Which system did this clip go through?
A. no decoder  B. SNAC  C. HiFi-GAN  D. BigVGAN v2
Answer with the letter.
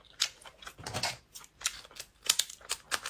A